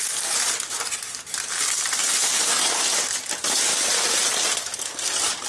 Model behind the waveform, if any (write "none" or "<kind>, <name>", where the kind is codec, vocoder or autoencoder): none